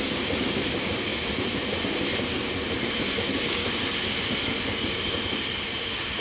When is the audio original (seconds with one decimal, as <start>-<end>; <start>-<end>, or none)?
0.0-6.2

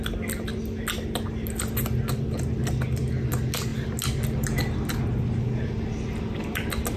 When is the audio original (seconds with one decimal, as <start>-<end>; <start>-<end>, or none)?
0.0-7.0